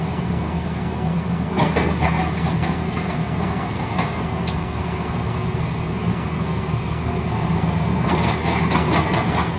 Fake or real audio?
fake